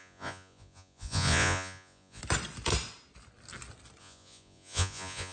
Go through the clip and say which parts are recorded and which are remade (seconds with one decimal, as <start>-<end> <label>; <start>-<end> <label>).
0.0-2.2 remade; 2.2-4.0 recorded; 4.0-5.3 remade